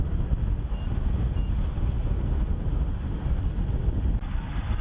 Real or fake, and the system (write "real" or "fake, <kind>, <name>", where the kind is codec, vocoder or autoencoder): real